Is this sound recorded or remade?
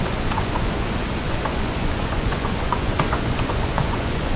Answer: remade